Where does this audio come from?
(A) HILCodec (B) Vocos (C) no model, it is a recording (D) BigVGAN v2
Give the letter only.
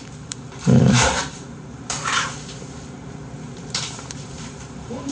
D